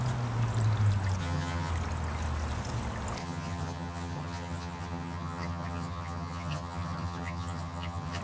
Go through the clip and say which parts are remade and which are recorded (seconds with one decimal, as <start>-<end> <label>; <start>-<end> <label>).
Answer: 0.0-1.2 recorded; 1.2-1.7 remade; 1.7-3.2 recorded; 3.2-8.2 remade